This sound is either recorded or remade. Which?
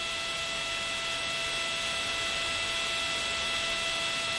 recorded